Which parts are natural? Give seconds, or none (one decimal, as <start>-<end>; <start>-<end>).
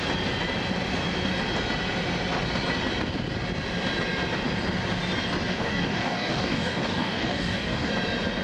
0.0-5.5; 7.9-8.4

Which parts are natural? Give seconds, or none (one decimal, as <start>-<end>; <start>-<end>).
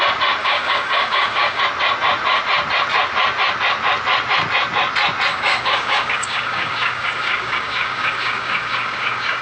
0.0-0.4; 1.6-5.3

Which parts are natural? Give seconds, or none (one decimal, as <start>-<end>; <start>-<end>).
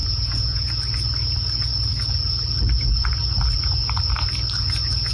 0.7-5.1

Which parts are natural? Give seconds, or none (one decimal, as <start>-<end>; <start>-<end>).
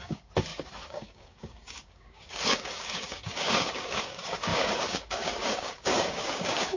none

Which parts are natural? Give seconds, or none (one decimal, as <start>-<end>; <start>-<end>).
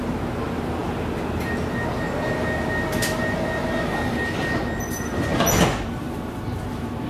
0.0-7.1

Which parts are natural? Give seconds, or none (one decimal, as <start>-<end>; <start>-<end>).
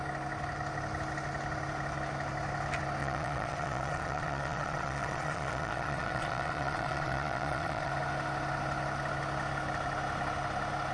0.0-3.0; 7.9-10.9